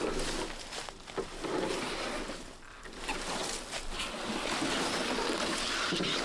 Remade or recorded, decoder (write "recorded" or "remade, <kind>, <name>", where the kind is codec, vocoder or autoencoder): recorded